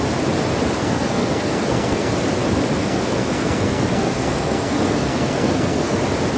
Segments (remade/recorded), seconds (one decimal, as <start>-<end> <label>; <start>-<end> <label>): 0.0-0.8 recorded; 0.8-2.1 remade; 2.1-2.8 recorded; 2.8-6.0 remade; 6.0-6.4 recorded